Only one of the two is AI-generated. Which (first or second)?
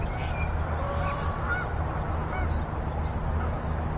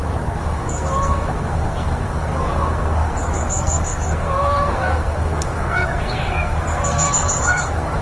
second